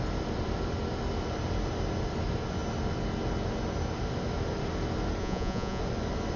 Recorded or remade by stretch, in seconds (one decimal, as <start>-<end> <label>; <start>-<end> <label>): 0.0-5.2 recorded; 5.2-5.8 remade; 5.8-6.4 recorded